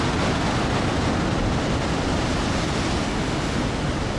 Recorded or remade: recorded